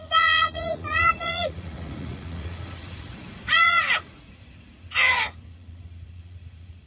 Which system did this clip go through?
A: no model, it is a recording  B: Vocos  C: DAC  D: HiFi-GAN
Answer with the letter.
B